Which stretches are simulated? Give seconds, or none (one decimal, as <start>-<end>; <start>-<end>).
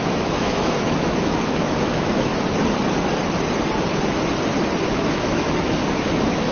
0.0-2.3; 4.9-6.5